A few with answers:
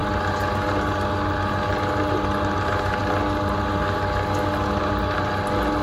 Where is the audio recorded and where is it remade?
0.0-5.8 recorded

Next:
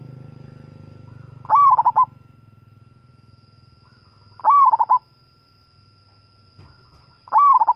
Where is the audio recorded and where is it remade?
0.0-7.8 recorded

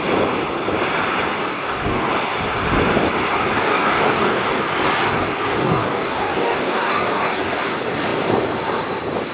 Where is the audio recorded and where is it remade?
0.0-1.4 recorded; 1.4-2.1 remade; 2.1-3.6 recorded; 3.6-4.6 remade; 4.6-5.5 recorded; 5.5-7.6 remade; 7.6-9.3 recorded